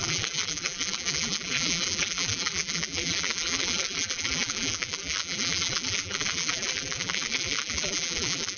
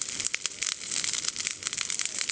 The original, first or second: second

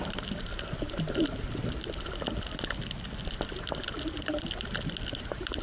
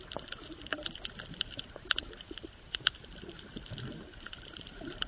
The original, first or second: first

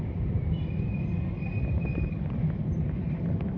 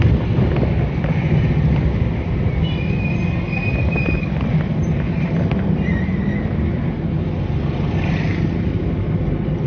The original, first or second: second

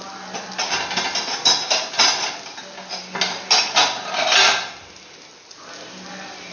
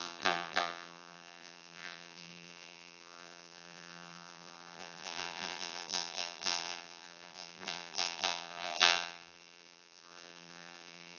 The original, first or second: first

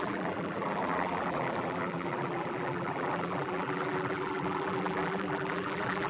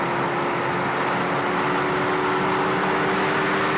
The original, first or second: second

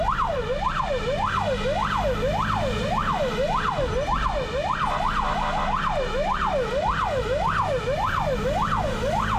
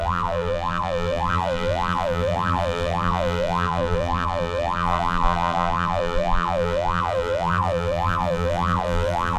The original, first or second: first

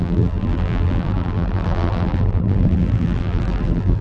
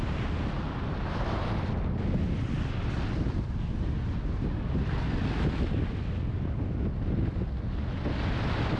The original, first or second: second